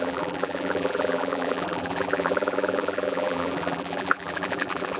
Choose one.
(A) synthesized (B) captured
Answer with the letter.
A